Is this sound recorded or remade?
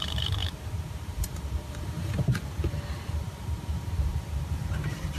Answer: remade